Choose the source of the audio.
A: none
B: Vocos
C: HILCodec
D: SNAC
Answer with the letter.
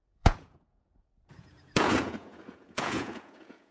B